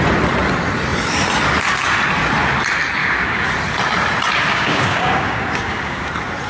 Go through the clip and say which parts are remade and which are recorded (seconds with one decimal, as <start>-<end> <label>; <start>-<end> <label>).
0.0-3.0 recorded; 3.0-3.5 remade; 3.5-4.5 recorded; 4.5-6.1 remade; 6.1-6.5 recorded